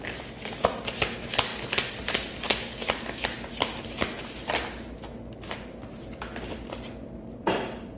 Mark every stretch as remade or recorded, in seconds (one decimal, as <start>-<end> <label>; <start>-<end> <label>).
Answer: 0.0-8.0 recorded

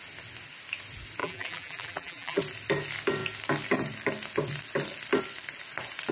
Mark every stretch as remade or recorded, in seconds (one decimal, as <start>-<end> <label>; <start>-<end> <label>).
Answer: 0.0-1.2 recorded; 1.2-2.4 remade; 2.4-6.1 recorded